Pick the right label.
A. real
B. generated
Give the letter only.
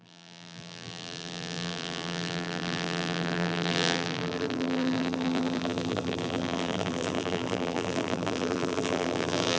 B